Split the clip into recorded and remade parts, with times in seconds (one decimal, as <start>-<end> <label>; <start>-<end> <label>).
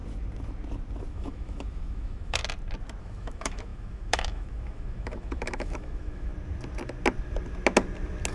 0.0-1.1 recorded; 1.1-2.4 remade; 2.4-3.0 recorded; 3.0-6.3 remade; 6.3-8.3 recorded